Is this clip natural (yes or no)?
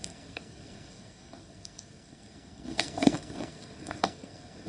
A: no